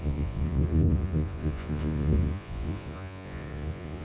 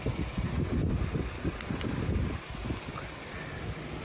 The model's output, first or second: first